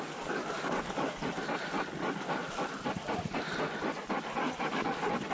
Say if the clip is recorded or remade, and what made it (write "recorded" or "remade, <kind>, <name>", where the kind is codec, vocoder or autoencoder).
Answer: recorded